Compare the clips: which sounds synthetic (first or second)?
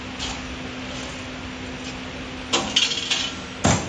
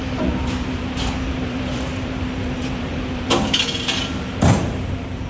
second